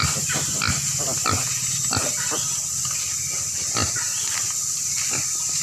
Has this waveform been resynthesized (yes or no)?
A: no